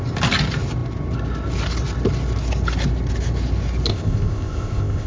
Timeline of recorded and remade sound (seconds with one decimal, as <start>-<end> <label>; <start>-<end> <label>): 0.0-3.9 recorded; 3.9-5.1 remade